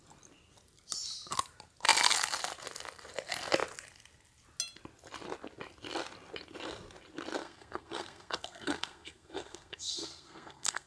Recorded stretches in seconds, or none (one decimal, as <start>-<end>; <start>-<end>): 0.0-7.4